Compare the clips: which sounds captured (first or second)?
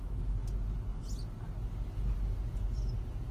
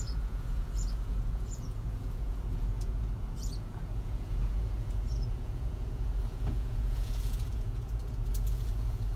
first